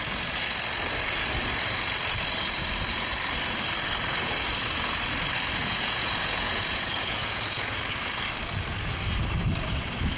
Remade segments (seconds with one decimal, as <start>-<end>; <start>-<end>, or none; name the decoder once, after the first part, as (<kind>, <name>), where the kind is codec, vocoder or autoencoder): 5.6-7.8 (vocoder, Vocos)